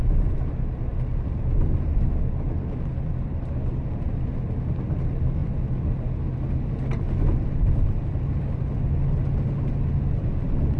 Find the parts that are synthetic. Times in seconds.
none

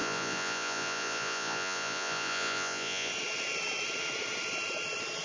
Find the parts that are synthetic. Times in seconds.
0.0-3.1 (vocoder, Vocos)

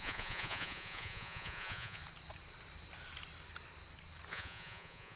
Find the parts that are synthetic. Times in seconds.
0.0-2.0 (vocoder, Vocos); 4.3-5.2

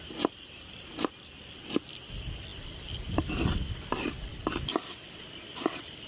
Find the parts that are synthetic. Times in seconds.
none

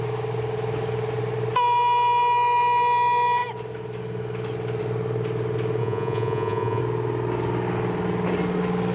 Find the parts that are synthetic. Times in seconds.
5.8-6.8 (vocoder, Vocos)

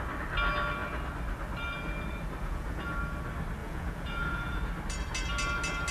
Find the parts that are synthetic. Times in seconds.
2.4-3.0 (vocoder, Vocos); 3.6-4.6

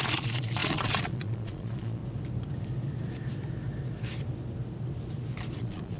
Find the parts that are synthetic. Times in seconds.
0.0-2.0 (vocoder, Vocos); 5.6-6.0